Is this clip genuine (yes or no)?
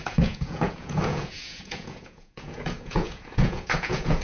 no